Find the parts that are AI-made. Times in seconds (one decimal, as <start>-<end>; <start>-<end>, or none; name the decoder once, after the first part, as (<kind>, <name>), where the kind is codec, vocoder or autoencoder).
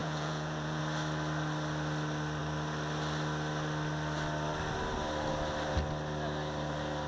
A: 0.0-0.8 (vocoder, Vocos)